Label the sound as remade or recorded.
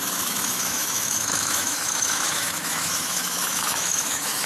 remade